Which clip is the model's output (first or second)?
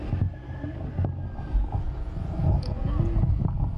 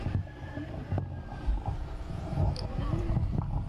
second